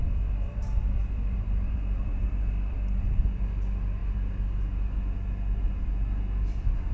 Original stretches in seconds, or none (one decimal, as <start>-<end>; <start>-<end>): 3.2-4.0

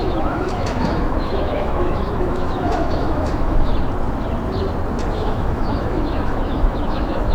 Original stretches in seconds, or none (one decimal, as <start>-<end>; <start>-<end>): 3.7-5.1

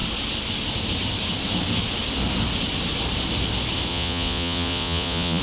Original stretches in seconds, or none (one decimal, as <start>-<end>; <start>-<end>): 0.0-3.9

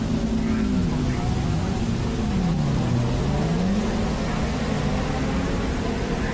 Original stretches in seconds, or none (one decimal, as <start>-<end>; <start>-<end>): 0.0-6.3

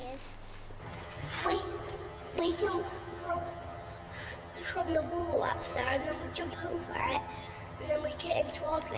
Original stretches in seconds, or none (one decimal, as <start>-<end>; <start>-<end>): 0.0-0.8

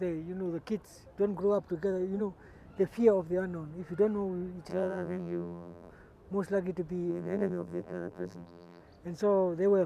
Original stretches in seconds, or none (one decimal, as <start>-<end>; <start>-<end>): 0.0-4.7; 5.9-7.1; 8.8-9.9

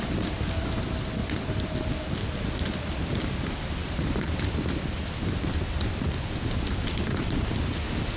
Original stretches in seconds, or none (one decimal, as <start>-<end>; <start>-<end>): 0.0-1.2; 1.9-3.8; 5.5-8.2

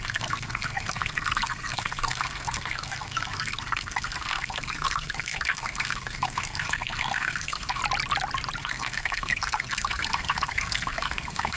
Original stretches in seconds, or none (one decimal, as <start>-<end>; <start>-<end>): 7.8-8.6